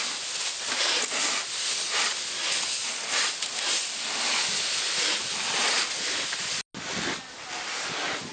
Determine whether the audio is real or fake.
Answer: real